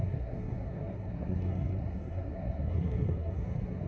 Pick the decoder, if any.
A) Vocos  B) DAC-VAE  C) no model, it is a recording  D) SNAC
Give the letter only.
D